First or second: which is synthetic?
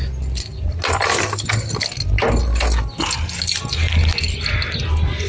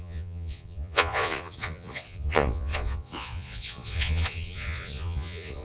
second